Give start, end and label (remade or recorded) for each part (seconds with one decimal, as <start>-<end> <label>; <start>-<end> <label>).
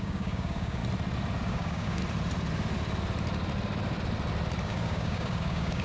0.0-0.8 remade; 0.8-1.5 recorded; 1.5-2.0 remade; 2.0-4.6 recorded; 4.6-5.8 remade